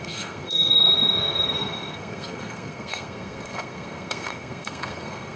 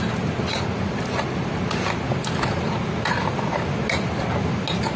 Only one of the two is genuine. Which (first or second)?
second